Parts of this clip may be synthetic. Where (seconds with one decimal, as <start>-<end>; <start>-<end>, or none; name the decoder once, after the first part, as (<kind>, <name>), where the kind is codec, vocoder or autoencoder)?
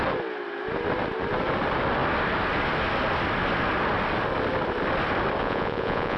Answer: 5.4-6.2 (vocoder, Vocos)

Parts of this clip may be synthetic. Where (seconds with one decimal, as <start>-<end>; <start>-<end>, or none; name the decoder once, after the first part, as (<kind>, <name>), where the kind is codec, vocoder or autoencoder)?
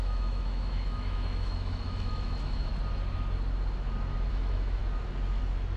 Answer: 0.0-2.7 (autoencoder, DAC-VAE); 4.3-4.8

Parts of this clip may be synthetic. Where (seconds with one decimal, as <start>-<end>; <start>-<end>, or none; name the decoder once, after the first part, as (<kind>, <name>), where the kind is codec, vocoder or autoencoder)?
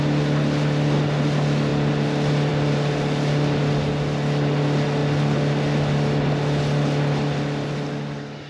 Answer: none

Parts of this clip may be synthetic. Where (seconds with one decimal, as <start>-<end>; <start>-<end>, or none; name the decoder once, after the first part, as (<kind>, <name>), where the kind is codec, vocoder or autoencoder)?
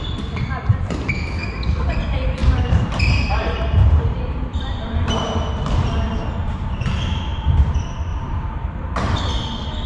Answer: 2.4-5.5 (vocoder, BigVGAN v2); 6.4-7.0; 8.1-9.2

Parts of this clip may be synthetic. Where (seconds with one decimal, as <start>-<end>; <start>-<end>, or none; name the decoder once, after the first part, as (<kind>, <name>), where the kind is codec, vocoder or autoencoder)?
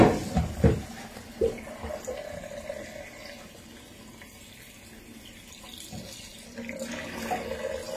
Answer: none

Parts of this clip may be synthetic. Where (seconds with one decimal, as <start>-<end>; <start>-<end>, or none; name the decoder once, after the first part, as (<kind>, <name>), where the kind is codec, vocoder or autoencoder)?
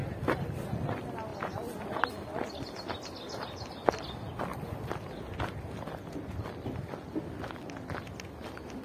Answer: none